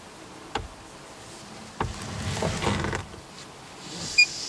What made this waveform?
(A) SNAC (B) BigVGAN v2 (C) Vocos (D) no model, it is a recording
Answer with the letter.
D